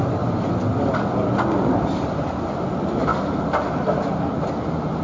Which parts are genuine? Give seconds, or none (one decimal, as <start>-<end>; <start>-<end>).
0.0-5.0